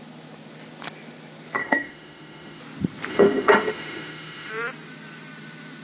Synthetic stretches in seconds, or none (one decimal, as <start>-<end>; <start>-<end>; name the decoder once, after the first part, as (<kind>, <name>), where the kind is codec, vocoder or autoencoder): 1.6-2.6 (autoencoder, DAC-VAE); 3.1-4.5